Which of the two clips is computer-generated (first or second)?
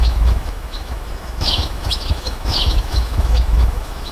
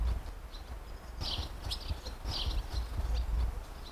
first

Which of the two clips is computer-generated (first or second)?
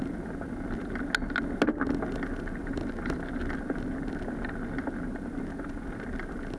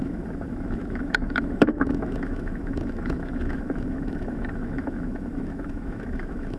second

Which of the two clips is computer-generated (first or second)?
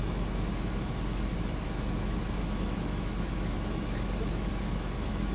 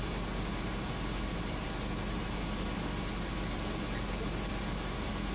first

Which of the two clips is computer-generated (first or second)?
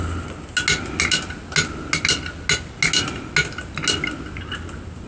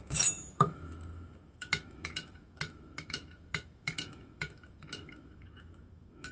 second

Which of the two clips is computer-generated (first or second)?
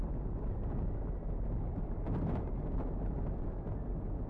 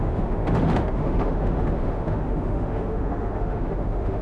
second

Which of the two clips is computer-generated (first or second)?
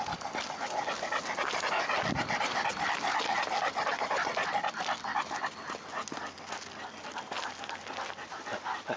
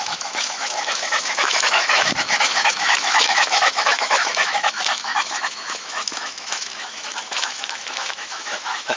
second